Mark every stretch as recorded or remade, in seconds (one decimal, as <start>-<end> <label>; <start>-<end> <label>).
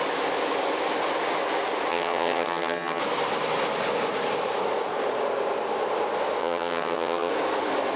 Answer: 0.0-1.9 recorded; 1.9-3.0 remade; 3.0-6.4 recorded; 6.4-7.3 remade; 7.3-8.0 recorded